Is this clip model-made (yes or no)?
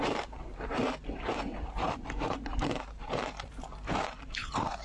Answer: yes